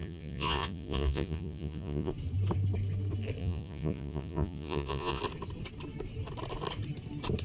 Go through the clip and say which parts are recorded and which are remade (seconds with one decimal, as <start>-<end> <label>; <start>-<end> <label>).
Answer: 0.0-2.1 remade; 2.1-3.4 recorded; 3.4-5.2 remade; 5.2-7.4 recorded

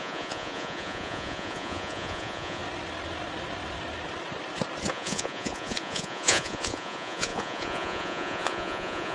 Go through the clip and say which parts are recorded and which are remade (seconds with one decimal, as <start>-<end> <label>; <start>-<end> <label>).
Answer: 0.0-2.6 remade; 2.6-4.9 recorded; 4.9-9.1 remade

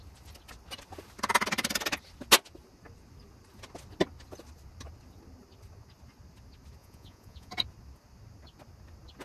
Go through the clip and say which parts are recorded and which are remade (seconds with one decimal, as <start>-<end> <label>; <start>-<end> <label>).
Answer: 0.0-6.8 recorded; 6.8-7.5 remade; 7.5-9.2 recorded

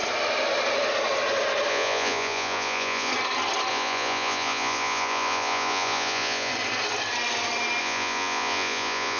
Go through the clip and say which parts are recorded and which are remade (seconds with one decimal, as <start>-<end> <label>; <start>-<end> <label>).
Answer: 0.0-1.7 recorded; 1.7-3.1 remade; 3.1-3.7 recorded; 3.7-6.5 remade; 6.5-7.8 recorded; 7.8-9.2 remade